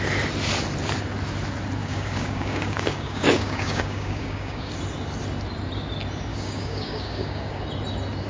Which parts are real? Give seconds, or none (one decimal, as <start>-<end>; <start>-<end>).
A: 0.0-1.8; 4.7-6.3; 7.6-8.3